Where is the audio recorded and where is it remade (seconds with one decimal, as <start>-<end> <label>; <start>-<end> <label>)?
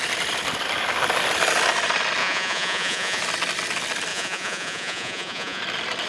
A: 0.0-2.2 recorded; 2.2-3.2 remade; 3.2-4.1 recorded; 4.1-5.6 remade; 5.6-6.1 recorded